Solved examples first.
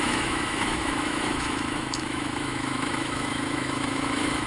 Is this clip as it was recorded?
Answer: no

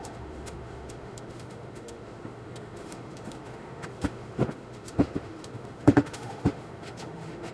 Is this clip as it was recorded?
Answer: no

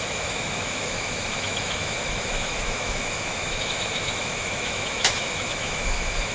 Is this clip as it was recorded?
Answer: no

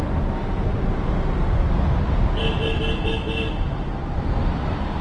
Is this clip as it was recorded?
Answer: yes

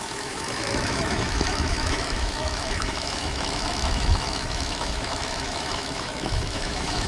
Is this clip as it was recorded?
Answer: no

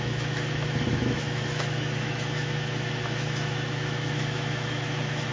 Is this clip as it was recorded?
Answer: no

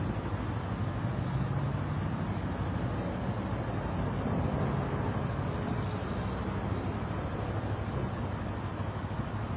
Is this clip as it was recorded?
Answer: yes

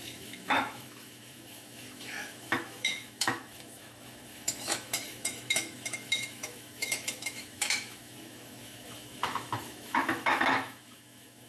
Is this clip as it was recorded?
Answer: no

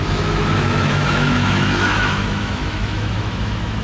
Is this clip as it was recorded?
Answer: no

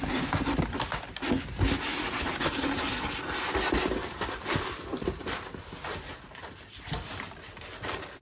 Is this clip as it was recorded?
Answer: yes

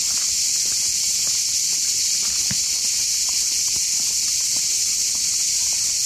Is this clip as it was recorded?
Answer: yes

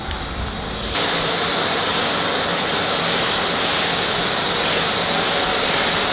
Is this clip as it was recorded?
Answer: yes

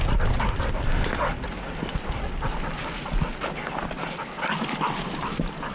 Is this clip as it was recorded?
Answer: yes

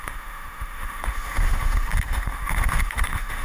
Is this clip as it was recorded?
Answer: no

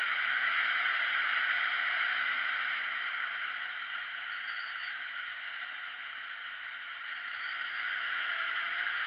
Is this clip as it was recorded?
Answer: no